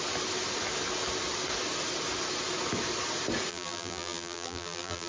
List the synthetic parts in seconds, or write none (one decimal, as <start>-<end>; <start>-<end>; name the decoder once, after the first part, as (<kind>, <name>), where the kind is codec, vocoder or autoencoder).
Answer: 3.5-5.1 (vocoder, BigVGAN v2)